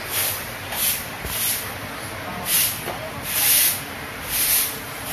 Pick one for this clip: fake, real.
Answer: real